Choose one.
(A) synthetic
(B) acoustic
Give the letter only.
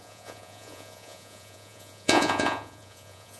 A